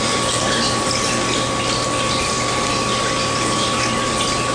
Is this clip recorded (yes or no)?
yes